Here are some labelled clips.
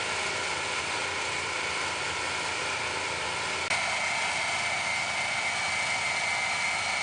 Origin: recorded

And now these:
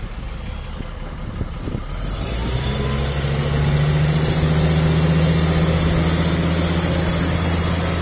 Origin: recorded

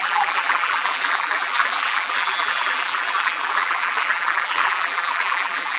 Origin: remade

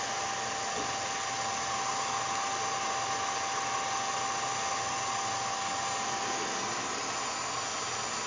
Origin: recorded